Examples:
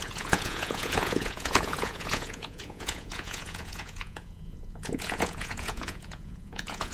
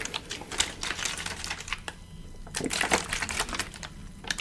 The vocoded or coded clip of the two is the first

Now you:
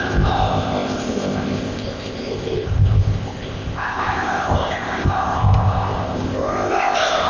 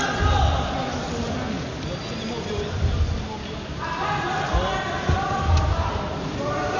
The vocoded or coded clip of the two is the first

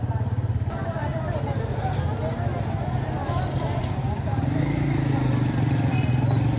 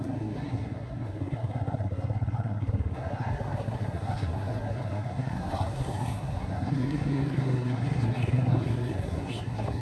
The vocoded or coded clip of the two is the second